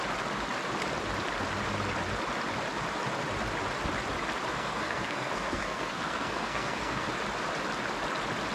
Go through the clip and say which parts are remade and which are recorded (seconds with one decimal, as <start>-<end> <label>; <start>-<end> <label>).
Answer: 0.0-4.5 recorded; 4.5-7.1 remade; 7.1-8.5 recorded